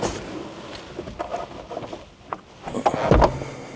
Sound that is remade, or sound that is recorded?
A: recorded